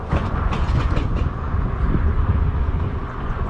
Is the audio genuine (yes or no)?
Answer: no